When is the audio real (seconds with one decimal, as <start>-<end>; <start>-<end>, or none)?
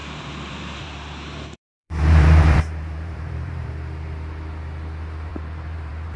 3.7-5.3